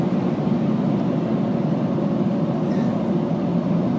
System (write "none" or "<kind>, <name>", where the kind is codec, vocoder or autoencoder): none